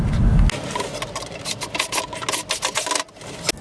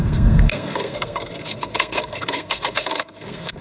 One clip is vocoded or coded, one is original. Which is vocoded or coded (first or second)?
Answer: second